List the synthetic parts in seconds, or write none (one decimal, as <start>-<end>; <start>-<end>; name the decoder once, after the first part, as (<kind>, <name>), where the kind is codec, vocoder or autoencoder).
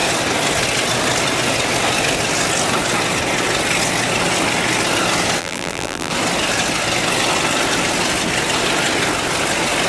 5.4-6.1 (vocoder, BigVGAN v2)